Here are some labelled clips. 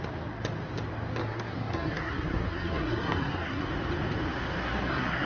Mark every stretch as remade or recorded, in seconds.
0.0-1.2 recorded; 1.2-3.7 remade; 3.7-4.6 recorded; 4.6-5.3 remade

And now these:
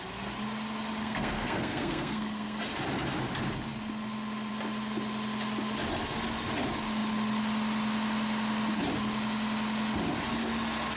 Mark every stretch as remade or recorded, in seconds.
0.0-1.0 recorded; 1.0-2.6 remade; 2.6-11.0 recorded

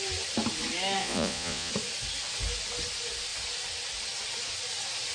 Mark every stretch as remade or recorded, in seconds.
0.0-1.0 recorded; 1.0-1.7 remade; 1.7-5.1 recorded

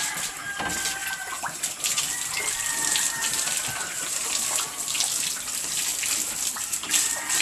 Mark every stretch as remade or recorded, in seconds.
0.0-7.4 recorded

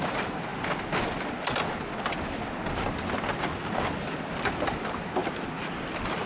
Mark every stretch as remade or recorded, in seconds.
0.0-0.5 remade; 0.5-4.3 recorded; 4.3-5.2 remade; 5.2-6.3 recorded